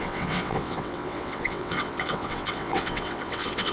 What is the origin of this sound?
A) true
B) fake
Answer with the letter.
B